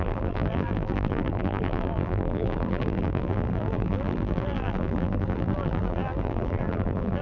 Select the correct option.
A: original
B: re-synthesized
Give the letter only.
B